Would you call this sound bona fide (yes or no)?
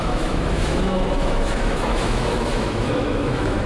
no